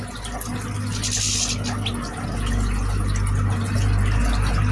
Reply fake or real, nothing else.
real